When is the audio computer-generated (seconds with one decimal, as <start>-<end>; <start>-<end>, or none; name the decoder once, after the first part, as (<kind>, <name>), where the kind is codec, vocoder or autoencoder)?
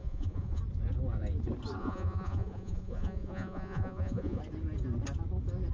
0.0-0.6 (vocoder, Vocos); 1.8-4.4